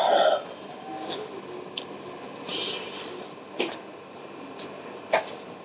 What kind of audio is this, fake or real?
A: real